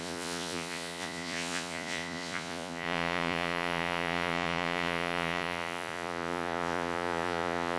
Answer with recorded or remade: remade